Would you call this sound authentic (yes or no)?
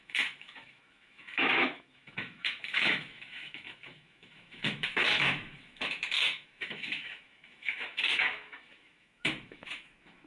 no